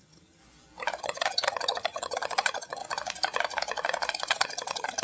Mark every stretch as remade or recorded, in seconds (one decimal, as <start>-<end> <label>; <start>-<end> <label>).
0.0-0.4 remade; 0.4-1.0 recorded; 1.0-2.8 remade; 2.8-4.3 recorded; 4.3-5.0 remade